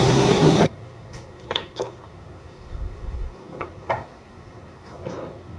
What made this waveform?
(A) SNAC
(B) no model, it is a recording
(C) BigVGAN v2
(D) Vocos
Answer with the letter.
A